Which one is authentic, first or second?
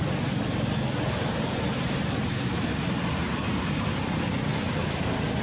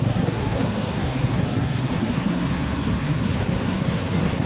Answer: first